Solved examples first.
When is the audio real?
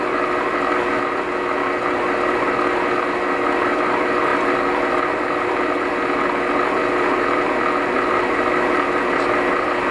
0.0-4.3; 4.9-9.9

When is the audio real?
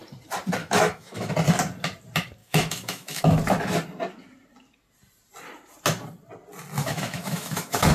0.0-0.6; 1.3-2.4; 3.2-6.8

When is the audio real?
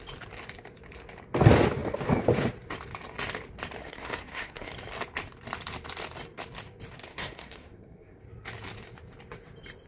0.0-3.8; 4.7-7.1; 8.2-9.9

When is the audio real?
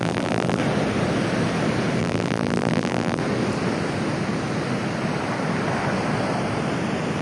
0.6-2.0; 3.2-7.2